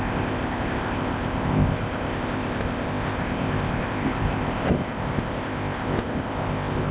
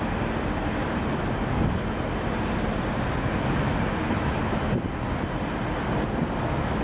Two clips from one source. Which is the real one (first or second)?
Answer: second